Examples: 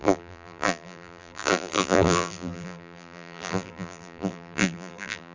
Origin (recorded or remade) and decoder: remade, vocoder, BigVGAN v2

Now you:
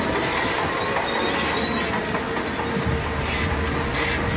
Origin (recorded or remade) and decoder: recorded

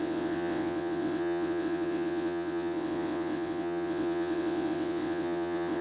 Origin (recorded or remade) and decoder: remade, vocoder, WaveNeXt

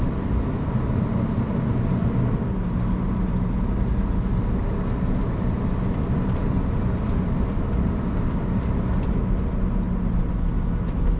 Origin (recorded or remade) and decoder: recorded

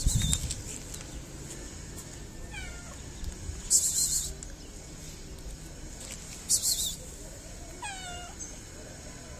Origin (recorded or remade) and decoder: recorded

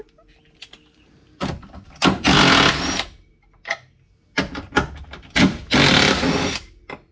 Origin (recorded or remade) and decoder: recorded